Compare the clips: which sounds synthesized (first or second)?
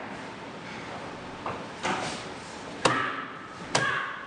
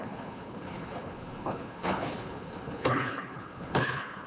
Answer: second